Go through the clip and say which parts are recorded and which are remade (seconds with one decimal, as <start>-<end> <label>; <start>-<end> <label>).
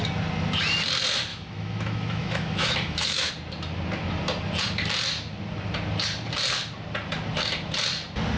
0.0-1.3 recorded; 1.3-3.3 remade; 3.3-8.4 recorded